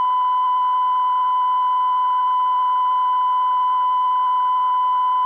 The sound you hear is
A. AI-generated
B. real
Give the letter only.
B